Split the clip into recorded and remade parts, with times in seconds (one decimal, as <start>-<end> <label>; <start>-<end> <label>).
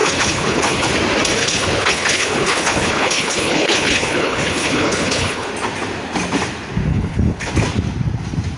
0.0-0.9 remade; 0.9-1.4 recorded; 1.4-5.5 remade; 5.5-6.9 recorded; 6.9-7.5 remade; 7.5-8.6 recorded